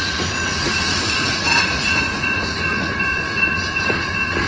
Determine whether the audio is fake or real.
fake